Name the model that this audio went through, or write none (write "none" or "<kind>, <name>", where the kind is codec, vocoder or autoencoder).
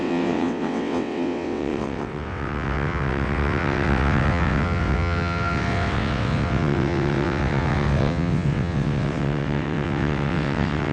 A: vocoder, WaveNeXt